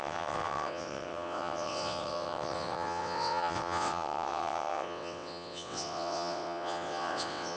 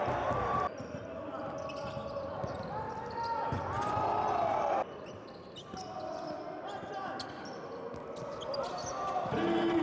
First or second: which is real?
second